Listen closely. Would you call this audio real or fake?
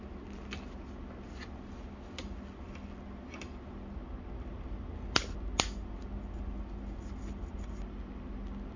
real